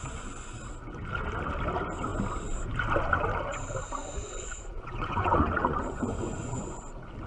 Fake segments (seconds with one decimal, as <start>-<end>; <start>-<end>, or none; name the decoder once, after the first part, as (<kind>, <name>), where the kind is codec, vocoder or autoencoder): 0.0-0.6 (vocoder, Vocos); 4.0-6.8